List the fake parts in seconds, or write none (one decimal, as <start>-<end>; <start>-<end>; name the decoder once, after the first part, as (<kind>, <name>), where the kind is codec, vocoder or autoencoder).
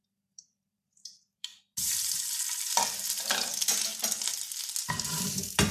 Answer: 0.0-1.5 (vocoder, BigVGAN v2); 4.9-5.7